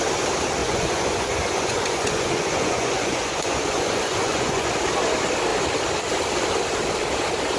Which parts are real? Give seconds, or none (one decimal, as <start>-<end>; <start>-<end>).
0.0-0.6; 4.7-7.6